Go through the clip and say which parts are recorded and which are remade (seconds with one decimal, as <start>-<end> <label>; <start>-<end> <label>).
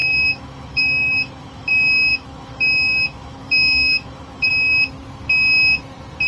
0.0-1.7 remade; 1.7-2.1 recorded; 2.1-4.5 remade; 4.5-6.3 recorded